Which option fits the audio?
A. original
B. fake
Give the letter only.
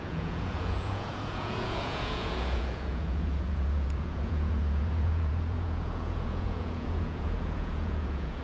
B